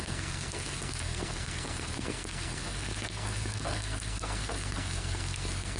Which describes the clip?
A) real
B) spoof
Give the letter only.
B